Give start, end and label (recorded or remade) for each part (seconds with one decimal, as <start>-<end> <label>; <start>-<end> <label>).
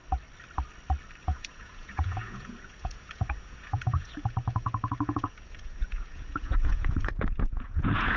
0.0-1.2 recorded; 1.2-8.2 remade